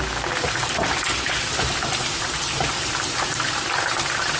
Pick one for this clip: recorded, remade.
remade